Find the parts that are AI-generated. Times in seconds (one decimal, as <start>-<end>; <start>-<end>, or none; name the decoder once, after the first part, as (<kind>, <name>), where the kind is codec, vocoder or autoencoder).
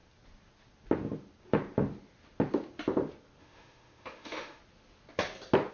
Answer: 3.4-4.6 (autoencoder, DAC-VAE)